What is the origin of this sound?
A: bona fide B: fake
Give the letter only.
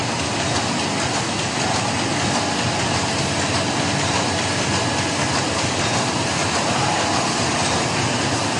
A